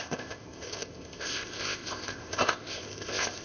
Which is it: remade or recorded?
remade